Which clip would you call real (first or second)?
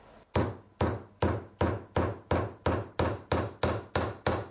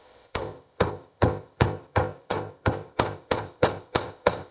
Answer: first